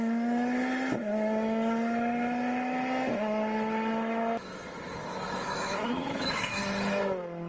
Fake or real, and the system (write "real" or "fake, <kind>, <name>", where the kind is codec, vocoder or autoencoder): fake, autoencoder, DAC-VAE